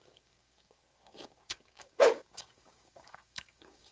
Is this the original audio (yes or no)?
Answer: no